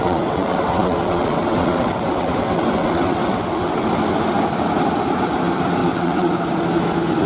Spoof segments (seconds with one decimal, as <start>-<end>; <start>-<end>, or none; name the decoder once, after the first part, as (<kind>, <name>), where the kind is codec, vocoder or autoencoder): 0.0-3.9 (vocoder, WaveNeXt); 5.8-6.3